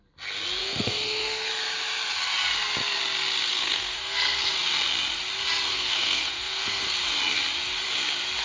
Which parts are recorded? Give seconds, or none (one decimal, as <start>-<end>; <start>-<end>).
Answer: 0.0-0.6; 1.5-3.5; 4.5-5.7; 6.8-8.4